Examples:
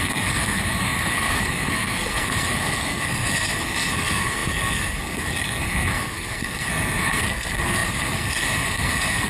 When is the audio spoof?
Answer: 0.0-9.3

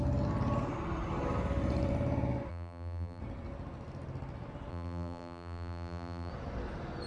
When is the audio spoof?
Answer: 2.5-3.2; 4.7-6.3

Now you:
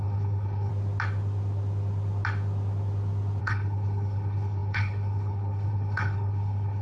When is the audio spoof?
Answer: 0.0-0.7; 3.4-6.8

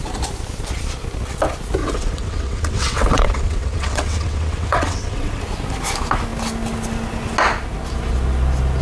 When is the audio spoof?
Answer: 1.8-5.4

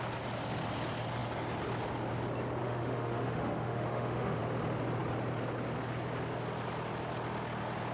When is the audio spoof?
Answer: 2.6-4.4

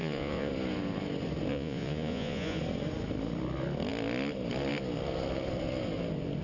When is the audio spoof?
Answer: 0.0-0.5; 1.5-2.6